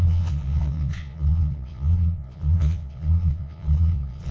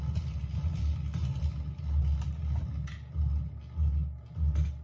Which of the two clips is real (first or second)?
second